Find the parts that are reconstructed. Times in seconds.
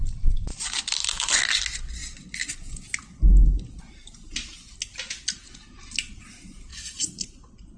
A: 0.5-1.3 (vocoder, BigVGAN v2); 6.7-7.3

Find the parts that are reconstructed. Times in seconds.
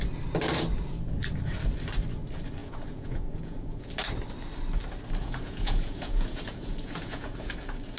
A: 2.6-3.9 (vocoder, Vocos); 5.2-7.5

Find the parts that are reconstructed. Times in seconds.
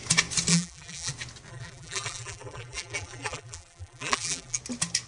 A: 0.5-1.1 (vocoder, BigVGAN v2); 1.5-4.6